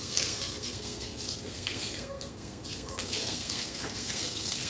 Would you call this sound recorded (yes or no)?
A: no